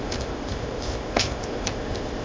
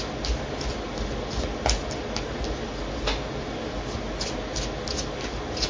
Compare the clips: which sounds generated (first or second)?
first